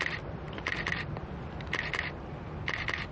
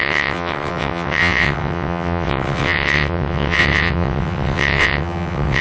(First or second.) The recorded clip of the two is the first